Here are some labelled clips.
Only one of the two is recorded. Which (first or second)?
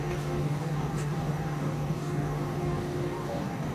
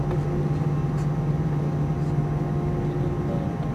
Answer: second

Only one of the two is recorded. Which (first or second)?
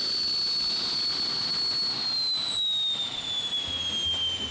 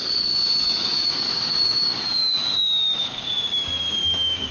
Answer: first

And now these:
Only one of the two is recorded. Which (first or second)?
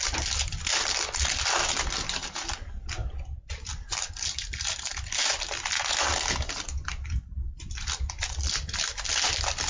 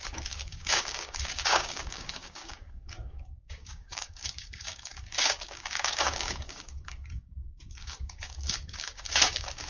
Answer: first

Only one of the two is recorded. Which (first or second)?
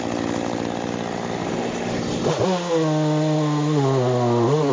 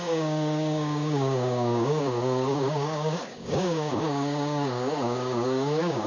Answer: first